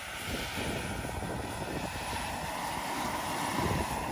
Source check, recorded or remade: recorded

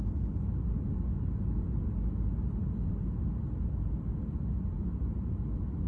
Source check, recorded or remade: recorded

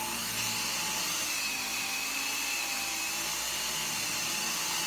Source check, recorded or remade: recorded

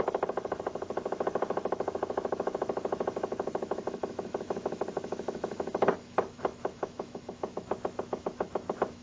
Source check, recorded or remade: remade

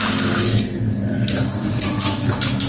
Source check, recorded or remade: recorded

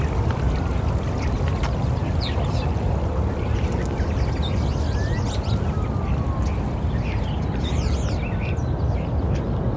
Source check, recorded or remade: recorded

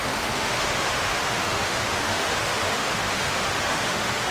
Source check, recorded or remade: remade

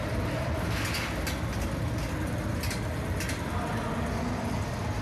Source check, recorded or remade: recorded